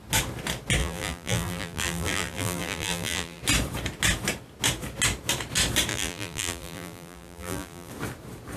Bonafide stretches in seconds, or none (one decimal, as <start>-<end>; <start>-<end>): 0.0-0.8; 3.4-5.9; 7.9-8.6